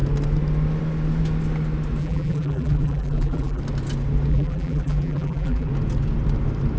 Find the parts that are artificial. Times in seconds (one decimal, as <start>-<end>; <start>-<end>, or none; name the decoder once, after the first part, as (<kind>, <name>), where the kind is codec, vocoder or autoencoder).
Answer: 2.0-3.6 (vocoder, BigVGAN v2); 4.3-5.7